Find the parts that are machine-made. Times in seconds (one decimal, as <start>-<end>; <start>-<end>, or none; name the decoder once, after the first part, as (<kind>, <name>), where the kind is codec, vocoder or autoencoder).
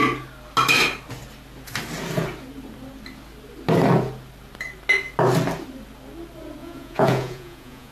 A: 6.6-7.9 (vocoder, Vocos)